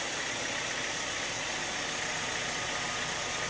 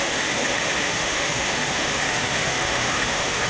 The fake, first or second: second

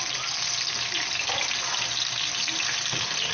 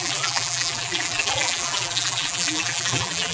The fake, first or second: second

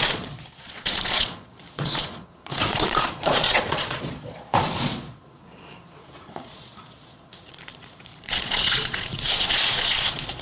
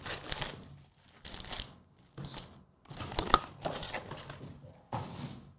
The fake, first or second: first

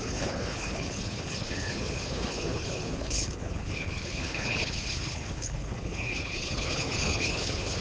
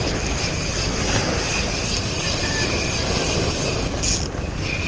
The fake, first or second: first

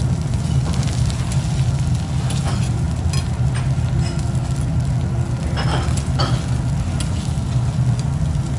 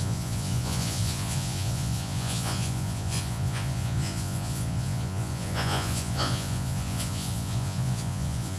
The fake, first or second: second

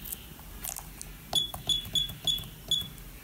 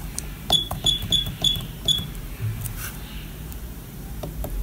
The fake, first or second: second